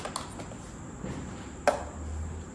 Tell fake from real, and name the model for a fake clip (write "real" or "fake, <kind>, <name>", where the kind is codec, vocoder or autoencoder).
real